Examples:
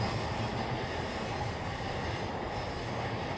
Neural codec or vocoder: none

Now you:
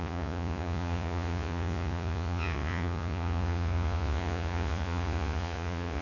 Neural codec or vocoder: vocoder, Vocos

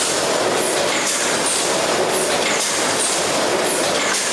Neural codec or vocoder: none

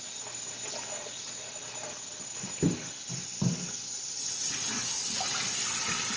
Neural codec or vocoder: none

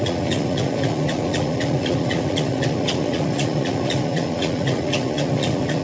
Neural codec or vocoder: vocoder, Vocos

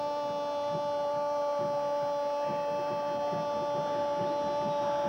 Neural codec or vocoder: none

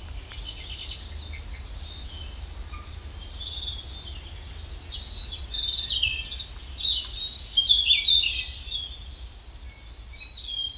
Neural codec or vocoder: none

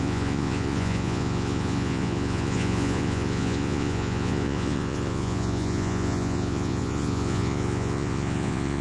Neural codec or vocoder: vocoder, Vocos